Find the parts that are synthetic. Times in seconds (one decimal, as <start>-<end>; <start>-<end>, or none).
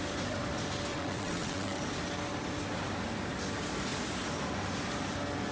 0.9-1.8